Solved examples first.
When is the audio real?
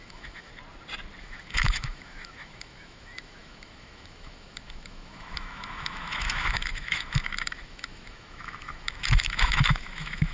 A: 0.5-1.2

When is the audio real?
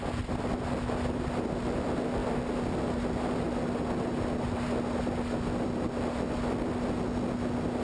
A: 0.0-7.8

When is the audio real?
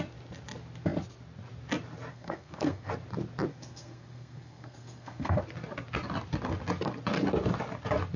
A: 0.0-2.1; 2.9-3.5; 5.4-8.2